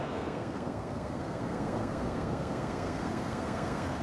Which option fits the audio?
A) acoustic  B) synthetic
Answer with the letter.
B